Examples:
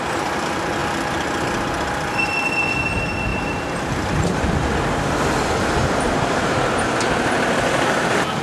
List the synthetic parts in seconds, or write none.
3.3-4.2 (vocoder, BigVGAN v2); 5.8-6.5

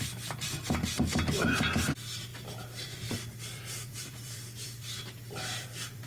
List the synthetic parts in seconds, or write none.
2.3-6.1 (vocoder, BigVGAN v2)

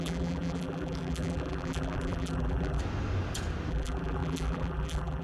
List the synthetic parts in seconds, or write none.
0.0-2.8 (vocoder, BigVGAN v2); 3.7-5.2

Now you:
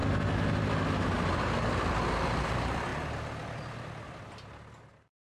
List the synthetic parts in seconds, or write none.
none

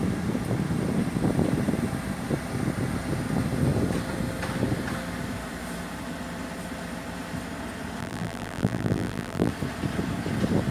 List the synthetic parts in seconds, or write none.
8.0-9.5 (vocoder, BigVGAN v2)